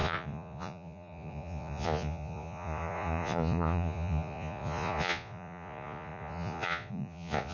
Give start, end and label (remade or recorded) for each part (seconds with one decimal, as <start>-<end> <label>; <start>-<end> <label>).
0.0-7.5 remade